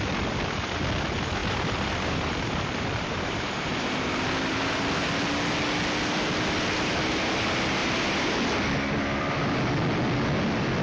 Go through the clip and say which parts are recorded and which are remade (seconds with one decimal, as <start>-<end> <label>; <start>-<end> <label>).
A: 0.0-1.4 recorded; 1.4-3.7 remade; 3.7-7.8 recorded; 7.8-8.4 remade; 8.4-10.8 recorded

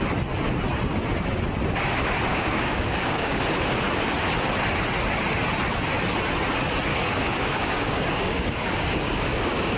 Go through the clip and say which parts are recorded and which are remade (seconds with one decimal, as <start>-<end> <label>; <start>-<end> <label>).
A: 0.0-2.3 recorded; 2.3-3.4 remade; 3.4-6.9 recorded; 6.9-9.8 remade

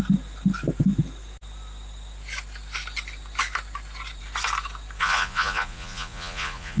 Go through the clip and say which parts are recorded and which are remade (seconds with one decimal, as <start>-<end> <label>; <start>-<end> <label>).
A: 0.0-5.0 recorded; 5.0-6.8 remade

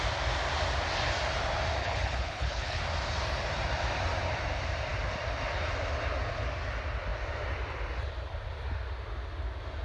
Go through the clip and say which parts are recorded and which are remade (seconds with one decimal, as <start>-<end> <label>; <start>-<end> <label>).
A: 0.0-1.8 recorded; 1.8-2.8 remade; 2.8-9.8 recorded

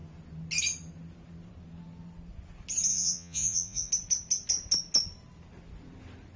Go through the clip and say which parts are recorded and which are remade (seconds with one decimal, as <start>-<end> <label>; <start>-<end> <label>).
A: 0.0-2.9 recorded; 2.9-3.9 remade; 3.9-6.4 recorded

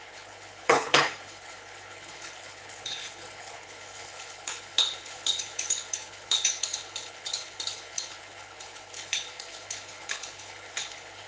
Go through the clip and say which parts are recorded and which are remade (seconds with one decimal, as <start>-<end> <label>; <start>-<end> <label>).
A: 0.0-11.3 remade